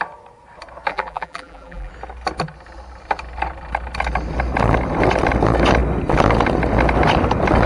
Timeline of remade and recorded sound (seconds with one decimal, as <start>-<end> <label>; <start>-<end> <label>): 0.0-0.9 recorded; 0.9-1.9 remade; 1.9-7.7 recorded